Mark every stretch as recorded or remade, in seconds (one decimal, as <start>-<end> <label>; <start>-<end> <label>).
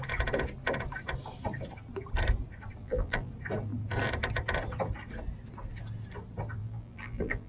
0.0-2.8 recorded; 2.8-3.3 remade; 3.3-6.6 recorded; 6.6-7.5 remade